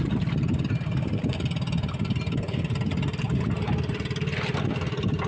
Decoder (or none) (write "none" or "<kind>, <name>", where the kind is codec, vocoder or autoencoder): none